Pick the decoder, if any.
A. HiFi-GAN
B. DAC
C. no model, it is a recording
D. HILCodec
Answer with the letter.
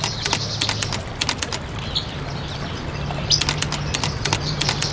C